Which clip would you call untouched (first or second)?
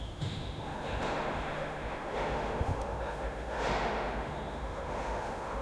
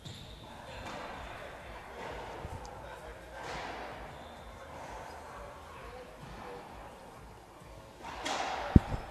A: second